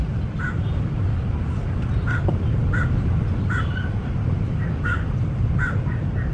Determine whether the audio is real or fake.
real